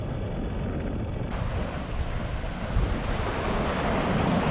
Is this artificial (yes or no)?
no